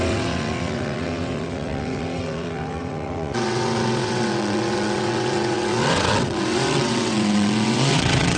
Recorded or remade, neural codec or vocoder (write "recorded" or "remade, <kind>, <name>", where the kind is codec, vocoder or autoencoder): remade, vocoder, WaveNeXt